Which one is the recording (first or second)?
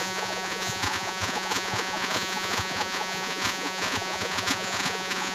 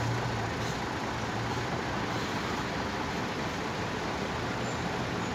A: second